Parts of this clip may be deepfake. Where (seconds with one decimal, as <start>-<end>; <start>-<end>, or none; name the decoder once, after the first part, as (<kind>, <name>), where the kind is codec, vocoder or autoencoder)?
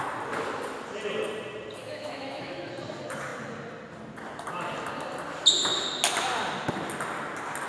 1.8-2.7 (autoencoder, DAC-VAE)